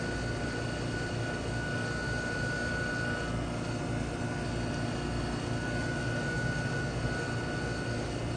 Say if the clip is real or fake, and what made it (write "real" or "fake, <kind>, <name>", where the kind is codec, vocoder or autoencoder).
real